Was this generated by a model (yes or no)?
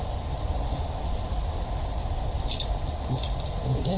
no